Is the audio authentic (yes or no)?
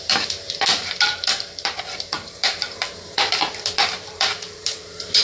no